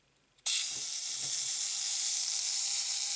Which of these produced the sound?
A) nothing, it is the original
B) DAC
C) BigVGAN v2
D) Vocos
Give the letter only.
C